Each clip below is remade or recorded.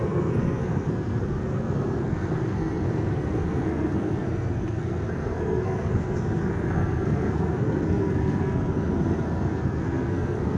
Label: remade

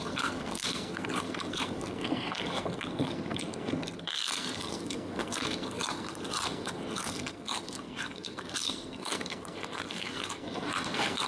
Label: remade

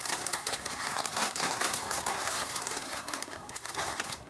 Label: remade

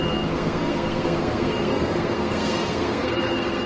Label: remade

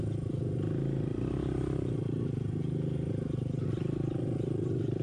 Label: recorded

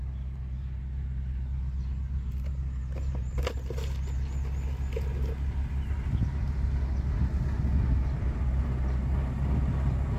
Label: recorded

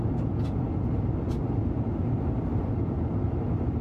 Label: recorded